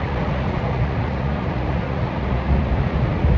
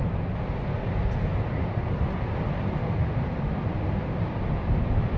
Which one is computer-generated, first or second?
first